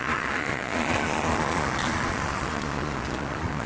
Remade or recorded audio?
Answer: remade